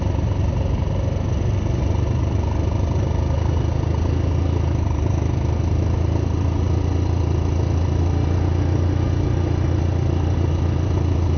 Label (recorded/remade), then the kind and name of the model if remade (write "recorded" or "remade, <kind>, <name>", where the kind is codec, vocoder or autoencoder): recorded